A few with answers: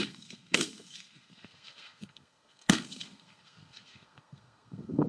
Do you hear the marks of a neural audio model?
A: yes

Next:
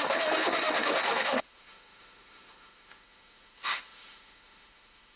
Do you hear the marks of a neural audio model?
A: yes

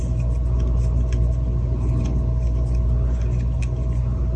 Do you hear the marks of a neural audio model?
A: no